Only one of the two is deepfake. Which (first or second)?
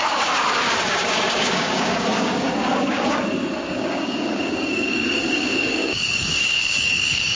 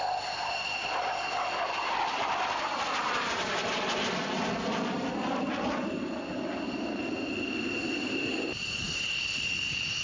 first